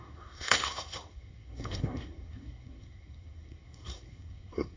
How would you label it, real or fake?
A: fake